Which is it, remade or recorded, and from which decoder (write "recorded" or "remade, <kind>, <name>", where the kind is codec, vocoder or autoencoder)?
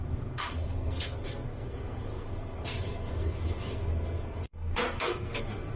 remade, codec, SNAC